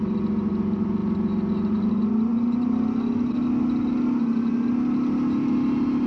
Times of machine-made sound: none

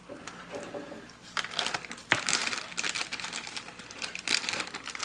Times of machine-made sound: none

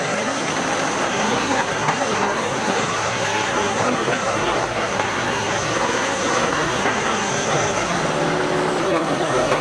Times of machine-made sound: 0.0-0.5 (codec, SNAC); 1.1-8.0; 8.8-9.6

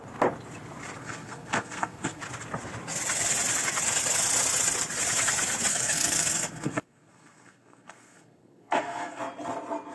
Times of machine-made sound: 1.0-2.2 (codec, SNAC); 5.7-9.2

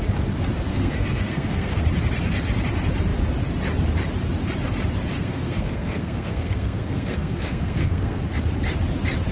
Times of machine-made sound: 0.7-1.8 (codec, SNAC); 5.1-8.2

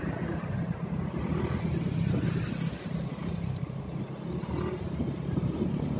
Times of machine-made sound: none